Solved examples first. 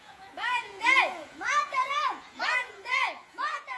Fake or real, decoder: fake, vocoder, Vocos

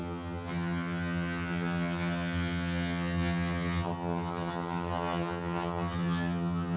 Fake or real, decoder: fake, vocoder, HiFi-GAN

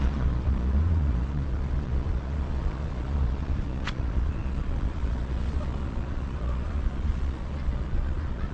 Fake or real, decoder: fake, vocoder, Vocos